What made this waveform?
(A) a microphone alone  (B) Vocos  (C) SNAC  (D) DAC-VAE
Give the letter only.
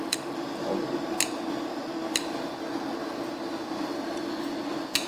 A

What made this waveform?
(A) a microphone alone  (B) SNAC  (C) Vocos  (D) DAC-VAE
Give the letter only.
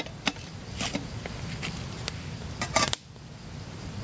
A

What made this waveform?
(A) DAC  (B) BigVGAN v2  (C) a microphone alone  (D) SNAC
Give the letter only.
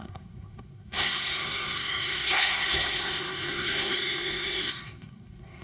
D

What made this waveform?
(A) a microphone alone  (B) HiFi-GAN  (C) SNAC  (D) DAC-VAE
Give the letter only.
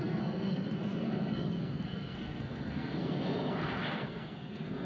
C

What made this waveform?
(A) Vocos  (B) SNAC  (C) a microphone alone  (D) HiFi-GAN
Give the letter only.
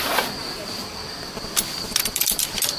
C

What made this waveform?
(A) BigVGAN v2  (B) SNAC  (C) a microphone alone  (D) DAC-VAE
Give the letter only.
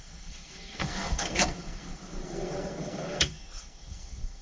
B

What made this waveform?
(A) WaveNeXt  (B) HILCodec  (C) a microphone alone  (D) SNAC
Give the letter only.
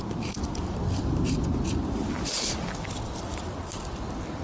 C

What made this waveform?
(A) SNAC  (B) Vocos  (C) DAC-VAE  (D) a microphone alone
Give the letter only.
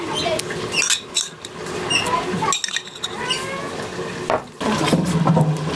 D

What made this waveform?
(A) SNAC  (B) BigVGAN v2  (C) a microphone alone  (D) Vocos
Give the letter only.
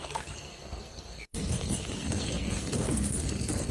A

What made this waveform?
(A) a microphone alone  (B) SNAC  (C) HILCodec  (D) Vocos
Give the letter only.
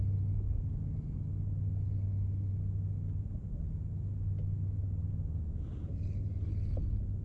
A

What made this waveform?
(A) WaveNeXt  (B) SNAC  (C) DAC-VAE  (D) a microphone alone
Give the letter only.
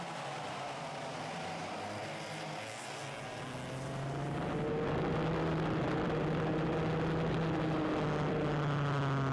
D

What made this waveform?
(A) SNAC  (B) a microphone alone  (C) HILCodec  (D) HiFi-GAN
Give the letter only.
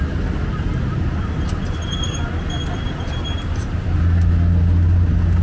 B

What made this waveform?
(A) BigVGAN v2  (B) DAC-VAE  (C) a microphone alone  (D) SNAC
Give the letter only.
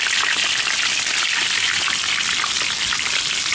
C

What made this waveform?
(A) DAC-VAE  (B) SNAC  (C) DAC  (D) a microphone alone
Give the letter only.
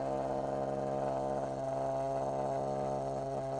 D